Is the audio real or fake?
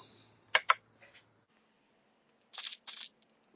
real